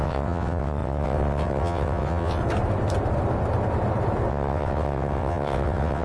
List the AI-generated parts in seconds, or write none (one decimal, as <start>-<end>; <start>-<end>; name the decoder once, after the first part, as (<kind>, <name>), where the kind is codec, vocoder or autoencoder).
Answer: 0.0-2.4 (vocoder, WaveNeXt); 4.3-6.0